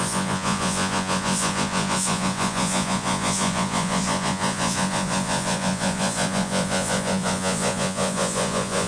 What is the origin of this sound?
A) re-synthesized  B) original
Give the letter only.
A